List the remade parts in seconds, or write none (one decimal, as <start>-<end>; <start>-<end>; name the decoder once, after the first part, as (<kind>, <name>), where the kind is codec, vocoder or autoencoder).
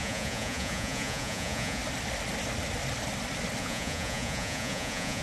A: 0.0-1.8 (vocoder, Vocos); 3.6-5.2